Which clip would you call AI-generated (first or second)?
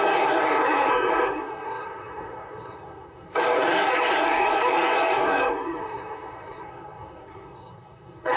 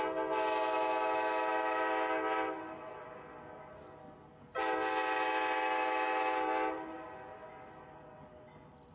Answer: first